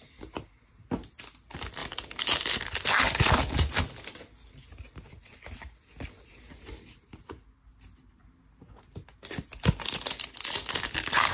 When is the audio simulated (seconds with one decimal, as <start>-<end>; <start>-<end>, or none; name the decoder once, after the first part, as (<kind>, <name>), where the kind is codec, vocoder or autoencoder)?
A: none